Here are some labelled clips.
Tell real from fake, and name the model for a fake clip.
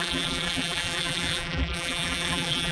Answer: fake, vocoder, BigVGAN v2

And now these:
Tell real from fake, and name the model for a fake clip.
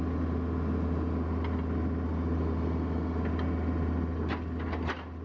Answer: real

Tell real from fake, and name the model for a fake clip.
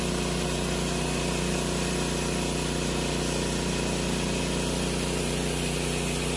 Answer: real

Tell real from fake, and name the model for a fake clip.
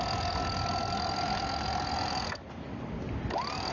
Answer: real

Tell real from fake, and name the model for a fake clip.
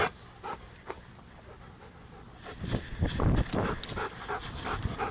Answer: real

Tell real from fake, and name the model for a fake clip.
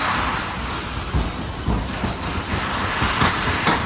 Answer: real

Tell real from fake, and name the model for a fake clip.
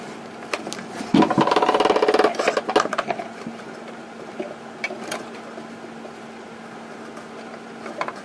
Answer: real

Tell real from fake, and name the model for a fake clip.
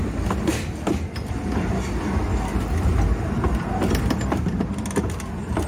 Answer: real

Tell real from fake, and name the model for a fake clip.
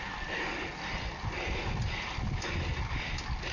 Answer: real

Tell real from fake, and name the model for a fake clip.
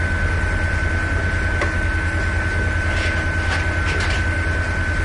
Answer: real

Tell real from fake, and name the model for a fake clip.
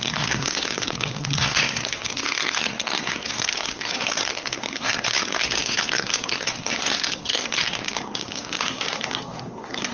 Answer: fake, codec, SNAC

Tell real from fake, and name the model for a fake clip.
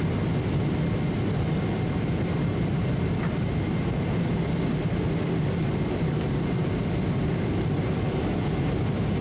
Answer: real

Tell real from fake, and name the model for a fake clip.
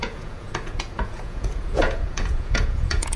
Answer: fake, vocoder, Vocos